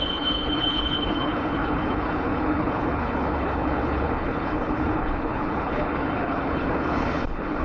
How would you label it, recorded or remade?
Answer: remade